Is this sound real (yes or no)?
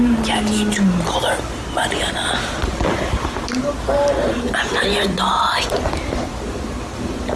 yes